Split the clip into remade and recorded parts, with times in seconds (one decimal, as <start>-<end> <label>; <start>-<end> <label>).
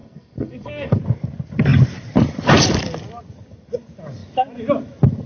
0.0-1.0 remade; 1.0-5.3 recorded